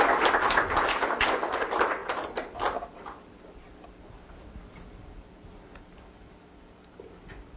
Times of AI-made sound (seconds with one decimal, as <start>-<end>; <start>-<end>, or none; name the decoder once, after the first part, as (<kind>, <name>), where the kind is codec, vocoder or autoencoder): none